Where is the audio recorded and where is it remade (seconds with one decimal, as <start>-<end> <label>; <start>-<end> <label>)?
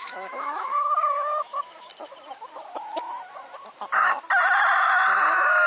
0.0-1.9 remade; 1.9-5.3 recorded; 5.3-5.7 remade